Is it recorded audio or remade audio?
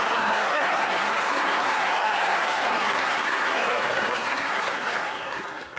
remade